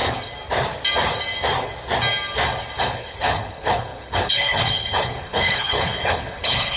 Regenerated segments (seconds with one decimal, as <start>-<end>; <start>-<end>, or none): 2.8-6.8